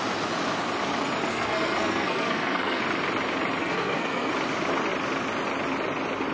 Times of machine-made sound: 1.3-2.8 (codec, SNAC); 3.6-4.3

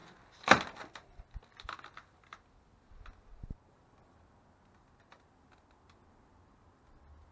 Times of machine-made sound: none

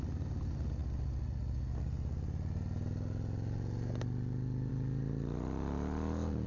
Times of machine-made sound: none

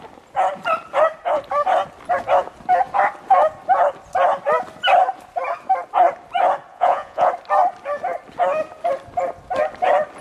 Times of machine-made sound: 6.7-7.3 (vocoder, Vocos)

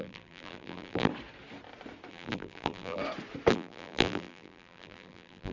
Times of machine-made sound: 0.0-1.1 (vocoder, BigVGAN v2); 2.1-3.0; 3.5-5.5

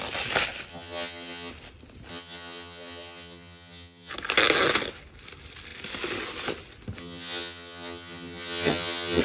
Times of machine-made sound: 0.7-1.5 (vocoder, HiFi-GAN); 2.1-4.1; 7.0-9.2

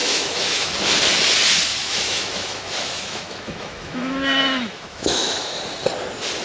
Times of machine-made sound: 0.0-0.7 (autoencoder, DAC-VAE); 1.8-5.6

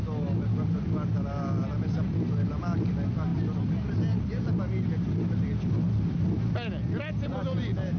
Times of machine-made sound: none